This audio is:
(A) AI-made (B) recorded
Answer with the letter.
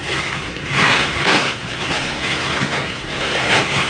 A